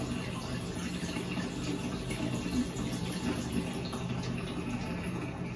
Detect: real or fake real